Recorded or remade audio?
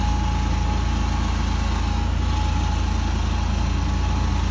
recorded